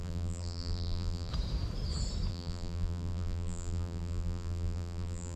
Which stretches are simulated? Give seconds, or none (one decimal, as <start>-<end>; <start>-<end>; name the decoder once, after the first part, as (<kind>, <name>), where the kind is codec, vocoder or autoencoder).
0.0-1.3 (vocoder, BigVGAN v2); 2.3-5.4

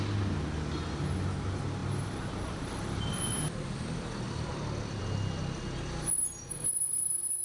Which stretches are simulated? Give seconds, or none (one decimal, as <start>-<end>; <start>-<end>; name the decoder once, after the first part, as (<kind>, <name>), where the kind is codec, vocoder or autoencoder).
1.8-6.1 (vocoder, BigVGAN v2)

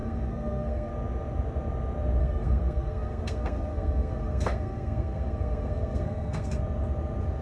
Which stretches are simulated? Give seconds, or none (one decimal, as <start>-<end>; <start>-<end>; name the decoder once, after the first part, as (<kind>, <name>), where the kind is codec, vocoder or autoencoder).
0.0-0.9 (codec, SNAC); 2.2-6.6

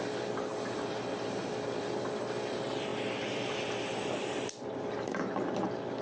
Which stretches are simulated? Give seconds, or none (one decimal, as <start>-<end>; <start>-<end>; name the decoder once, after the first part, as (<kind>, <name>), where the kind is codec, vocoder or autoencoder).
0.5-1.9 (vocoder, BigVGAN v2); 2.9-5.5

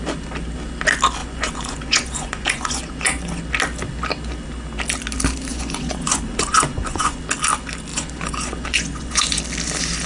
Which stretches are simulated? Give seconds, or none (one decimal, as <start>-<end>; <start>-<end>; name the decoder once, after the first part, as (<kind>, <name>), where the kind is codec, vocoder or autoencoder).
1.2-3.4 (vocoder, Vocos); 5.5-7.2; 7.9-9.4

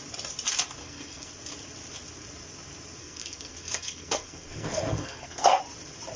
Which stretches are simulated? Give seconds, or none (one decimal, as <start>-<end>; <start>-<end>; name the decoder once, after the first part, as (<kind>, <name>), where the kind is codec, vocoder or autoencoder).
0.8-1.3 (codec, SNAC); 3.0-5.6

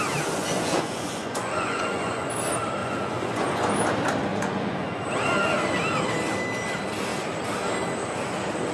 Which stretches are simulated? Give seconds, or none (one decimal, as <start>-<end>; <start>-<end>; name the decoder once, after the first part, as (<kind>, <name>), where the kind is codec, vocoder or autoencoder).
0.4-2.3 (vocoder, Vocos); 2.8-3.7; 4.3-5.0